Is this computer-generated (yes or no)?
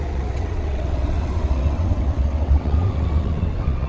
yes